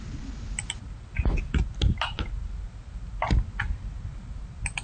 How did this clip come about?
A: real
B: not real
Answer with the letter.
A